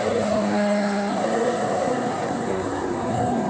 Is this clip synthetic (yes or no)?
yes